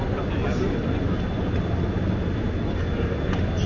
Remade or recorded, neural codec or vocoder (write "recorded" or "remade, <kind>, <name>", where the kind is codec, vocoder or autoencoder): recorded